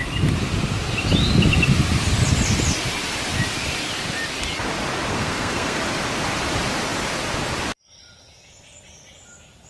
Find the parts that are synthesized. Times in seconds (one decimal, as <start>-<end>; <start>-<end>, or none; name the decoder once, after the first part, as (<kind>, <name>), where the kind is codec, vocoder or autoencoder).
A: 5.1-5.8 (codec, SNAC)